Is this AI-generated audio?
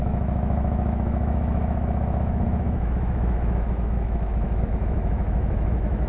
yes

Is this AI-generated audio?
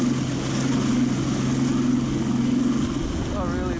no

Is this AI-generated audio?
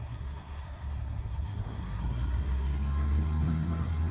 yes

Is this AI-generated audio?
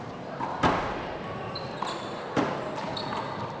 no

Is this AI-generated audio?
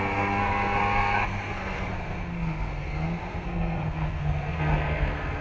yes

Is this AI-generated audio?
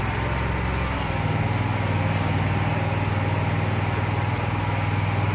no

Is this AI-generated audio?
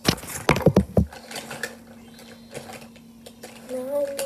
no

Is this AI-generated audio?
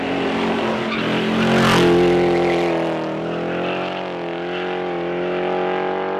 no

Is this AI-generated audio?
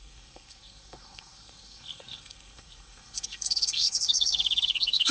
yes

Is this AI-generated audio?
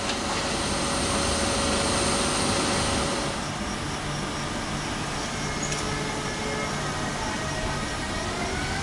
no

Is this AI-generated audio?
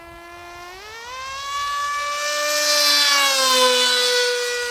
no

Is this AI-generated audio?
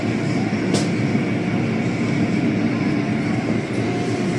no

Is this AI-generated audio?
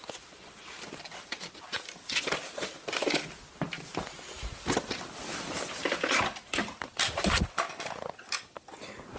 no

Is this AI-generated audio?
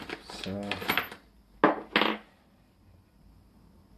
no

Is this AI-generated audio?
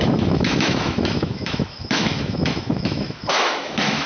yes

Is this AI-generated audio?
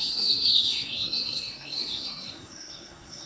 yes